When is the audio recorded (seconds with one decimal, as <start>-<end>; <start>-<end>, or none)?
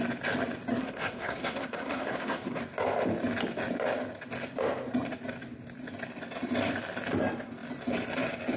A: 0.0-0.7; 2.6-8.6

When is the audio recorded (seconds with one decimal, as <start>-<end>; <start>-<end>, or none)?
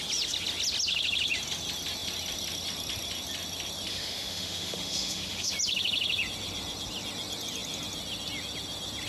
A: 0.0-3.9; 5.5-9.1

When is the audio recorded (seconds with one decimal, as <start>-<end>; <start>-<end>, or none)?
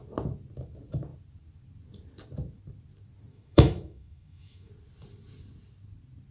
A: 0.0-3.3; 4.7-6.3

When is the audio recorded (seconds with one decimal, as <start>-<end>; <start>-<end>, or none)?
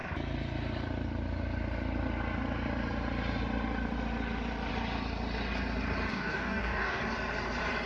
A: 0.0-6.1; 7.0-7.9